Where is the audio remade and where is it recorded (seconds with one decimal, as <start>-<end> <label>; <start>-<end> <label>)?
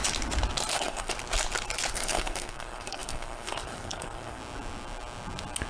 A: 0.0-0.7 recorded; 0.7-1.1 remade; 1.1-1.9 recorded; 1.9-4.4 remade; 4.4-5.7 recorded